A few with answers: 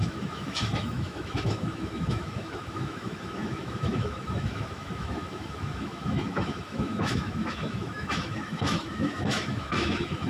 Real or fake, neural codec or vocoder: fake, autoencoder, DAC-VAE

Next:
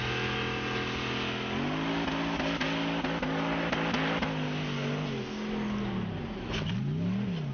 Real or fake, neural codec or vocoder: real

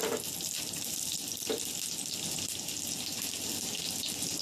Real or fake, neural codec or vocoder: real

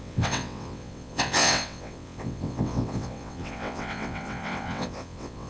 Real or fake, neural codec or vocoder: fake, vocoder, WaveNeXt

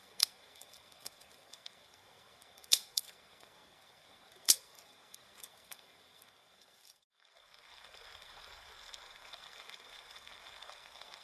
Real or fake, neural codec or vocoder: fake, codec, SNAC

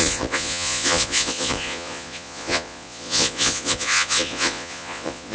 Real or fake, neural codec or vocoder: fake, vocoder, Vocos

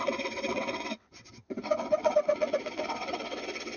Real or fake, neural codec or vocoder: fake, vocoder, WaveNeXt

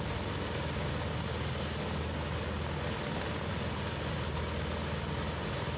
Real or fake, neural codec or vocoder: real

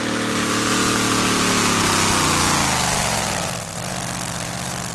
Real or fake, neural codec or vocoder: real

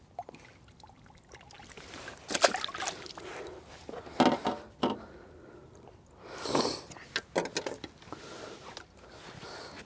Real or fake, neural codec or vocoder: real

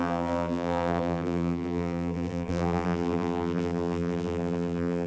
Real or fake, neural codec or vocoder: fake, vocoder, BigVGAN v2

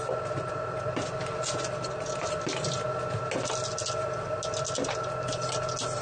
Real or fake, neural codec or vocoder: real